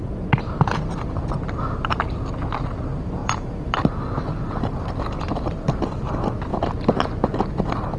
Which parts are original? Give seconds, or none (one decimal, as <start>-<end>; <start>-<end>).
0.0-0.9; 6.5-7.5

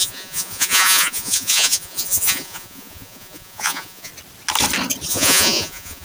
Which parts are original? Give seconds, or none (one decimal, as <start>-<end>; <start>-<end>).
4.1-5.1